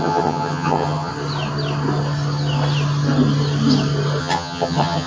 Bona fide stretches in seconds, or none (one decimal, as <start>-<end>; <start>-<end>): 1.1-4.2